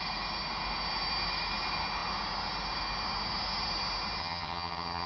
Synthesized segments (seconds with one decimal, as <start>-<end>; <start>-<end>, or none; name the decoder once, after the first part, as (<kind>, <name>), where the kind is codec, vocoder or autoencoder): 4.2-5.1 (vocoder, HiFi-GAN)

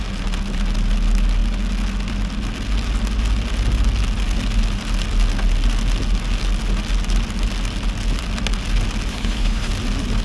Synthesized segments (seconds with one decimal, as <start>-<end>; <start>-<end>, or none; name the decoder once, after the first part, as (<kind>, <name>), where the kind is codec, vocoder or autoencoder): 9.1-9.7 (codec, HILCodec)

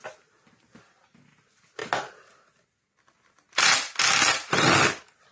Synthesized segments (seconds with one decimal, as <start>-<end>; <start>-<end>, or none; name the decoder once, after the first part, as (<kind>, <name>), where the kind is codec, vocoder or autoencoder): none